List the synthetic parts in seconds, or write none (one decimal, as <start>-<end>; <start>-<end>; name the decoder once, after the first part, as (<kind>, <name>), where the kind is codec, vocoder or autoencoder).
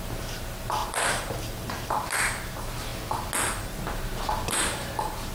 0.0-2.9 (vocoder, BigVGAN v2); 3.9-5.3